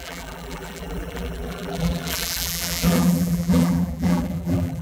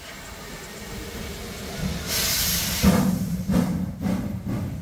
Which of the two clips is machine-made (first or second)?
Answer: first